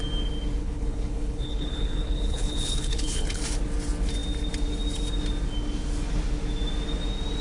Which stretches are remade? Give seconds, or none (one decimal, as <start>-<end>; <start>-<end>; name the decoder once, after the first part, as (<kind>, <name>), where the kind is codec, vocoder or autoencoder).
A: 0.6-3.4 (codec, HILCodec)